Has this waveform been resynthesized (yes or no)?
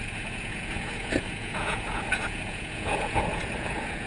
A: yes